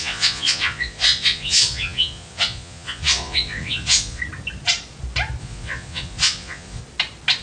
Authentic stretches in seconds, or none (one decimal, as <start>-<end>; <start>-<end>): 4.2-5.4; 6.8-7.4